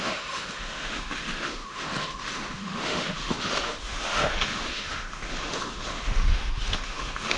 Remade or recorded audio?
remade